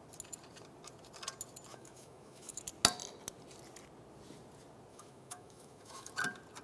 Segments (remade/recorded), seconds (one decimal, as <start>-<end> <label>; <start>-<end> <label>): 0.0-1.7 recorded; 1.7-2.6 remade; 2.6-4.9 recorded; 4.9-6.1 remade; 6.1-6.6 recorded

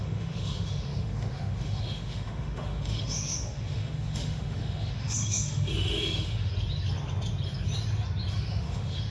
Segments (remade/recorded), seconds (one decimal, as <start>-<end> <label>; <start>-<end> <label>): 0.0-6.5 remade; 6.5-8.3 recorded; 8.3-9.1 remade

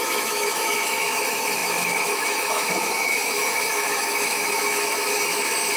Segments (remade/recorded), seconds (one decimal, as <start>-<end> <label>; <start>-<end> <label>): 0.0-5.8 remade

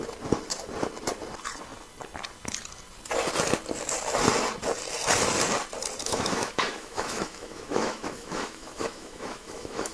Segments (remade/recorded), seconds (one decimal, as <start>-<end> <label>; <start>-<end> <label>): 0.0-6.0 recorded; 6.0-9.9 remade

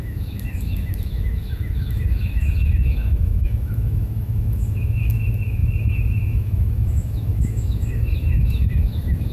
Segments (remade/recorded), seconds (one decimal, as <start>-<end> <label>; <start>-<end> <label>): 0.0-9.3 remade